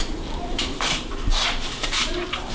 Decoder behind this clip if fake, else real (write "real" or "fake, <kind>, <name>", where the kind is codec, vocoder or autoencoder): fake, vocoder, BigVGAN v2